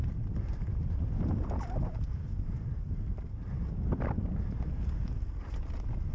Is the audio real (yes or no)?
yes